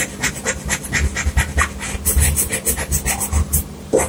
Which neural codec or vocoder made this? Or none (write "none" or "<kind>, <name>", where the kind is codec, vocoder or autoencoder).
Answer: none